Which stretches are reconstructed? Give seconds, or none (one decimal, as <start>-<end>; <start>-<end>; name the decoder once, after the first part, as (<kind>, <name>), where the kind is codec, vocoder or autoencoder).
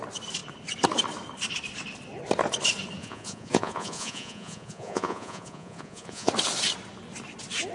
3.0-6.3 (vocoder, Vocos)